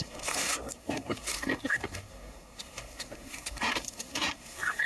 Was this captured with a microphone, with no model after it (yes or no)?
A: no